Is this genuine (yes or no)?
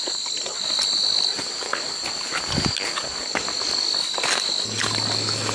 yes